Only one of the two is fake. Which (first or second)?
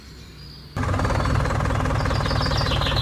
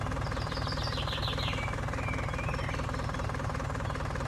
second